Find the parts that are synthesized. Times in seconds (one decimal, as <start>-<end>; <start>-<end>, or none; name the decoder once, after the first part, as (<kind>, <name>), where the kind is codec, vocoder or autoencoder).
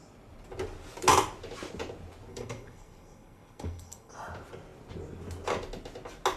2.3-4.1 (codec, SNAC)